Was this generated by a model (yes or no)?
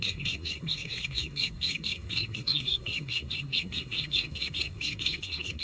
yes